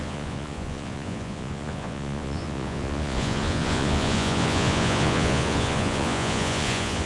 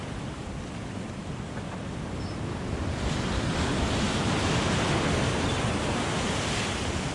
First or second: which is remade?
first